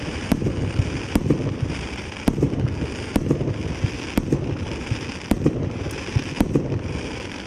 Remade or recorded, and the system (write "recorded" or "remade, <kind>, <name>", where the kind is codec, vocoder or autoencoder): remade, vocoder, BigVGAN v2